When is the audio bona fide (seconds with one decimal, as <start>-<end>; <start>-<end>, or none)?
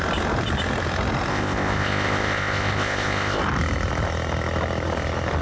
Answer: 0.0-1.3; 3.4-5.4